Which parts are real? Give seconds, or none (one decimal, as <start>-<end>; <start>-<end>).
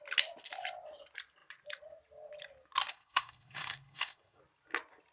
0.0-2.9; 4.4-5.1